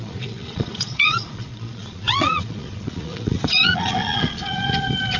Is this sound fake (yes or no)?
yes